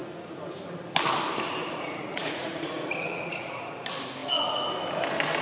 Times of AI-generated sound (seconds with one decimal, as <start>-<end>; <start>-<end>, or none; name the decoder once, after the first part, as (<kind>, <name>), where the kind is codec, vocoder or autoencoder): 1.6-3.7 (vocoder, Vocos)